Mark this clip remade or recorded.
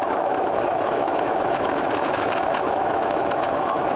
remade